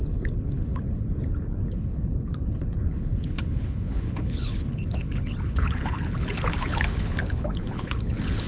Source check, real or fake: fake